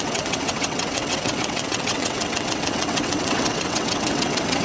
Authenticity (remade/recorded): remade